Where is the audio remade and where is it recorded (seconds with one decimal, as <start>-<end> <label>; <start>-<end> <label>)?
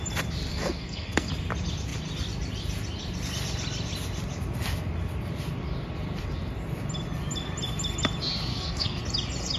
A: 0.0-0.5 recorded; 0.5-1.3 remade; 1.3-8.5 recorded; 8.5-9.0 remade; 9.0-9.6 recorded